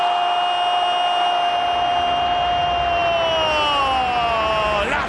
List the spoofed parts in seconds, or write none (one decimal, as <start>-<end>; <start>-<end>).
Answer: none